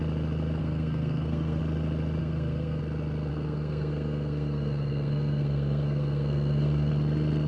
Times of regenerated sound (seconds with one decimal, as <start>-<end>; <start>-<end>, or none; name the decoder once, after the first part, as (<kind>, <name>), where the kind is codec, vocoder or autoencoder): 0.6-1.6 (codec, SNAC); 2.2-2.8; 3.3-6.9